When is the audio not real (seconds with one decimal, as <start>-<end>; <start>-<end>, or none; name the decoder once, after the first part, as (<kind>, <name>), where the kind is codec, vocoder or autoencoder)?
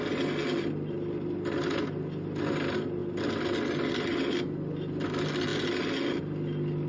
none